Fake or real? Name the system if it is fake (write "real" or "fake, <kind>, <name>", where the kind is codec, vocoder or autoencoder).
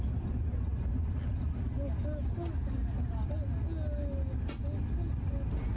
real